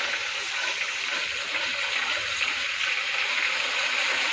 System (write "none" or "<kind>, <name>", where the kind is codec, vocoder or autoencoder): none